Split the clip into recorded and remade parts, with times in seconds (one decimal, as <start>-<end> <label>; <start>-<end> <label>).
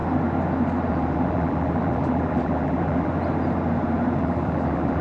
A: 0.0-0.9 recorded; 0.9-3.1 remade; 3.1-4.2 recorded; 4.2-5.0 remade